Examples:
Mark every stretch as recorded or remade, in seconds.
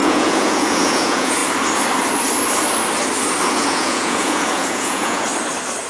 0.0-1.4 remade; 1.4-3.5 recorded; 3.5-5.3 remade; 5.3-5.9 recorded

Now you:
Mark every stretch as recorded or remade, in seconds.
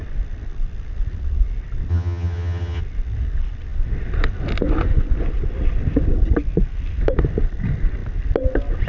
0.0-1.9 recorded; 1.9-2.8 remade; 2.8-8.9 recorded